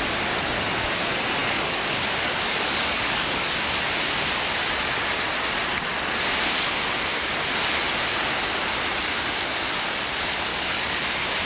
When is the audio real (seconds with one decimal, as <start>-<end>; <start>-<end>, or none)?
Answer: 0.0-1.4; 3.6-10.5; 11.0-11.5